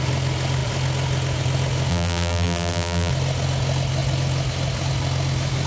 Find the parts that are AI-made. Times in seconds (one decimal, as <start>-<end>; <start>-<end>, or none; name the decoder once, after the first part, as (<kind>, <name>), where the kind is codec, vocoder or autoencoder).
1.9-3.1 (vocoder, BigVGAN v2)